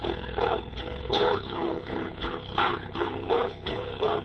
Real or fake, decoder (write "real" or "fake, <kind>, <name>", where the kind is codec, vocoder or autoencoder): fake, codec, HILCodec